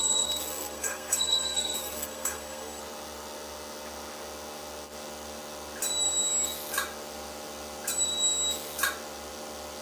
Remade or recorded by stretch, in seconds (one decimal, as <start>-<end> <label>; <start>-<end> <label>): 0.0-2.8 remade; 2.8-9.8 recorded